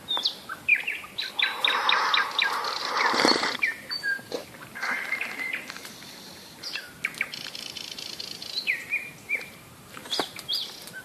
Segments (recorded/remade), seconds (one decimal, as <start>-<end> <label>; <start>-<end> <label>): 0.0-0.7 remade; 0.7-1.3 recorded; 1.3-10.0 remade; 10.0-11.0 recorded